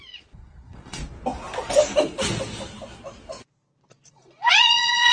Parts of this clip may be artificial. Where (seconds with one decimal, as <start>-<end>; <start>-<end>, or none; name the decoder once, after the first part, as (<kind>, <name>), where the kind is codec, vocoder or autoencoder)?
0.0-1.0 (vocoder, Vocos); 4.1-5.1